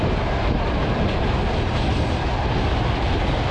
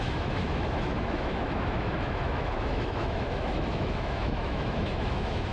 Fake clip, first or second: second